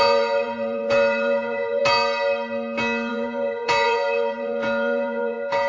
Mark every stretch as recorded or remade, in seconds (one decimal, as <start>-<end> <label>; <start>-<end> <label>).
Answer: 0.0-1.8 remade; 1.8-3.1 recorded; 3.1-5.7 remade